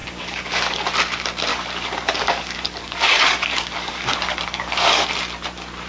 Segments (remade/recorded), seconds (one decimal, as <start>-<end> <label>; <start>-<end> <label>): 0.0-0.8 remade; 0.8-1.5 recorded; 1.5-5.0 remade; 5.0-5.9 recorded